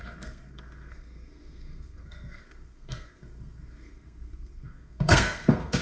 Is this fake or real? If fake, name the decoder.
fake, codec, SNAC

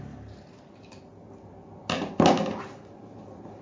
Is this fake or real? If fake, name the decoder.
real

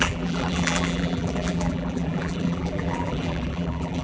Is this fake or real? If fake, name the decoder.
fake, vocoder, BigVGAN v2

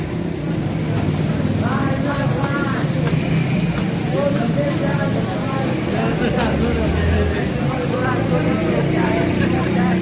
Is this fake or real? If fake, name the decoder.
real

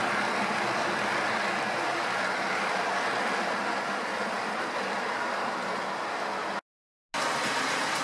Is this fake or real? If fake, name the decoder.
real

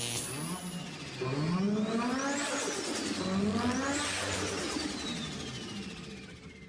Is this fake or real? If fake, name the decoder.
real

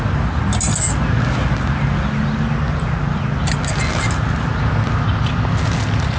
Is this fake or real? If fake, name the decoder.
real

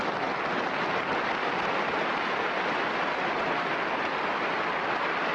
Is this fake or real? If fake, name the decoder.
real